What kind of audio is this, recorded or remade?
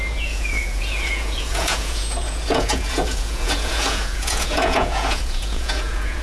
remade